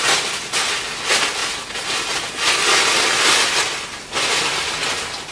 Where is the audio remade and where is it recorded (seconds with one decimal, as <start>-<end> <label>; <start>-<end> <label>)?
0.0-5.3 recorded